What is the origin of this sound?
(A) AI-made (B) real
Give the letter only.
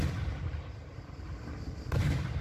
B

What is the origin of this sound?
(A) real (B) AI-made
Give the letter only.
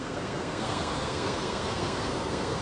B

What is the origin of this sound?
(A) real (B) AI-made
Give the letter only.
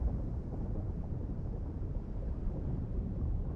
B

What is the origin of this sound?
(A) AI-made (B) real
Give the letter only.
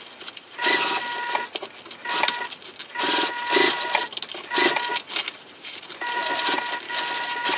B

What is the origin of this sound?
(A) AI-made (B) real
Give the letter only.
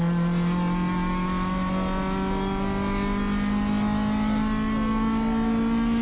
B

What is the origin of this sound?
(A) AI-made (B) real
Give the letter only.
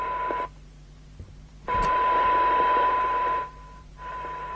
A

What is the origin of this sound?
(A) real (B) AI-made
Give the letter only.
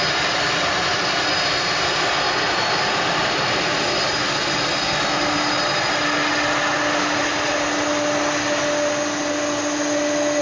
A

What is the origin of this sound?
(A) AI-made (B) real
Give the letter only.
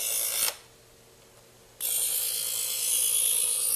B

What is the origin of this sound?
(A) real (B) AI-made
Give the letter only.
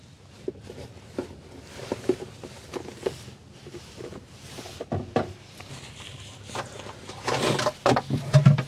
A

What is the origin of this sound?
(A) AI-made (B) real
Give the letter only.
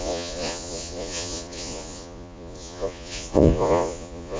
A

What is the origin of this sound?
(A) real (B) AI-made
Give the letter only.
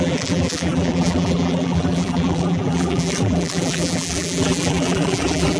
B